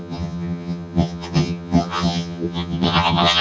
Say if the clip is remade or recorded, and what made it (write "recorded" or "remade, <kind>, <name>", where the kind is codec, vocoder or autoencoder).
remade, vocoder, HiFi-GAN